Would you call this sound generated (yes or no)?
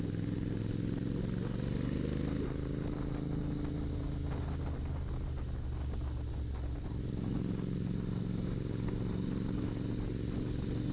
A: no